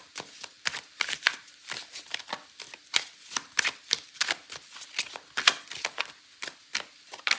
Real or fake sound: real